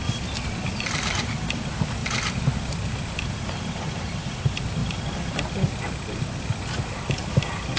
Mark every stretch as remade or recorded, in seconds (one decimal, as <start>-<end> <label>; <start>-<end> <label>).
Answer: 0.0-7.8 remade